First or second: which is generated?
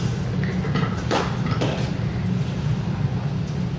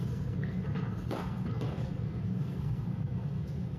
second